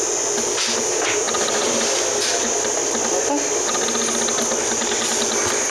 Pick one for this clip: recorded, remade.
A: recorded